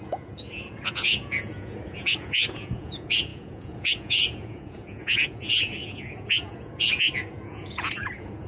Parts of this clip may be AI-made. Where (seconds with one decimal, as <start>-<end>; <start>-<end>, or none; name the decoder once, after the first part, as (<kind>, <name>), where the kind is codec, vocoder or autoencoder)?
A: 0.0-8.5 (vocoder, Vocos)